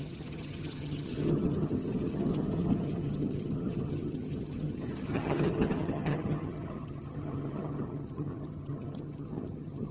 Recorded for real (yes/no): no